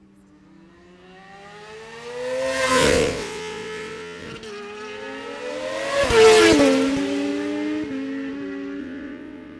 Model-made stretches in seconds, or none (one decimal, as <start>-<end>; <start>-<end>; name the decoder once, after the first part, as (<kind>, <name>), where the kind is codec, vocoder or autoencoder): 2.7-4.3 (vocoder, WaveNeXt); 8.8-9.6